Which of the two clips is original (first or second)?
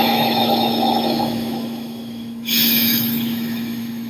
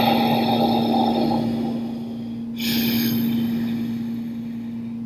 second